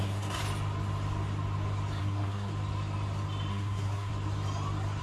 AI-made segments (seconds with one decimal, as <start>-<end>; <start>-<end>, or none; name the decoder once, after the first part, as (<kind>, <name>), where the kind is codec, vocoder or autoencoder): 0.0-0.4 (codec, SNAC); 2.0-2.5; 3.5-4.1